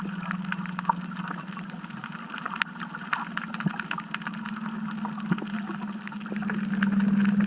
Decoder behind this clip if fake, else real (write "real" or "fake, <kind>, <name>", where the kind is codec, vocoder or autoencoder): real